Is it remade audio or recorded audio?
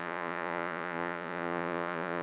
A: remade